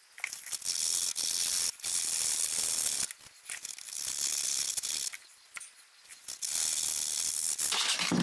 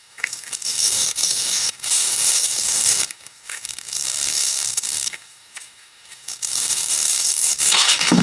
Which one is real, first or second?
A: first